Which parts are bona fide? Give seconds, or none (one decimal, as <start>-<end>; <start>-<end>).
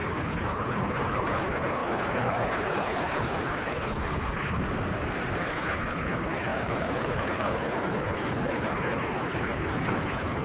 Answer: 4.6-5.4